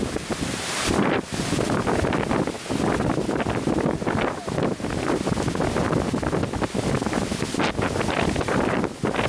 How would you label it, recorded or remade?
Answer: recorded